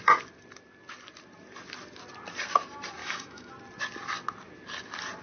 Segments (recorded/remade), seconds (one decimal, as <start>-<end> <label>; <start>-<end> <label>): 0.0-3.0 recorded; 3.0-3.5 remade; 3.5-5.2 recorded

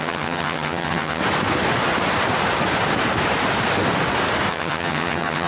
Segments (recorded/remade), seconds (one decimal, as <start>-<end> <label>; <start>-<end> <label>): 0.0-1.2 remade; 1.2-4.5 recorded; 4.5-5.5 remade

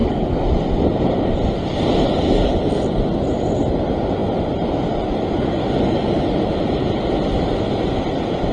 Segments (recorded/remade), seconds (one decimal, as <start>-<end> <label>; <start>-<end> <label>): 0.0-8.5 recorded

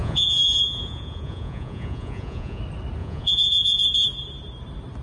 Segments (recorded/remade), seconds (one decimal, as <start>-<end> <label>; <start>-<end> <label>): 0.0-2.6 remade; 2.6-3.0 recorded; 3.0-3.8 remade; 3.8-5.0 recorded

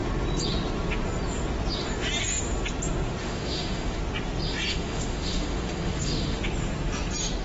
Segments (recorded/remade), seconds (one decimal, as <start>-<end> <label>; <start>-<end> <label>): 0.0-3.2 recorded; 3.2-4.0 remade; 4.0-4.7 recorded; 4.7-6.4 remade; 6.4-7.4 recorded